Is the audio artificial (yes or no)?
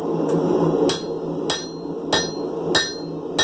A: no